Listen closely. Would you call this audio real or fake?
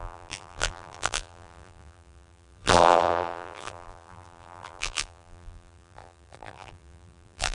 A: fake